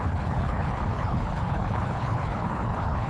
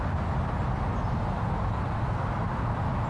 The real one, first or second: second